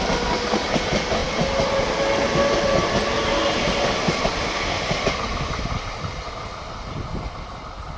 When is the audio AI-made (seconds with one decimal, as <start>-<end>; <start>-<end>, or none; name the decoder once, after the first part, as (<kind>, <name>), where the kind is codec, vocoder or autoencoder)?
none